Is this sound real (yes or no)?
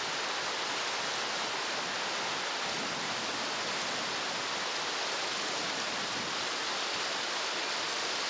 yes